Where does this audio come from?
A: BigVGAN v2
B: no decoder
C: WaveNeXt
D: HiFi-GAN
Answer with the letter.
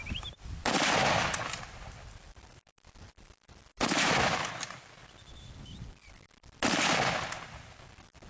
B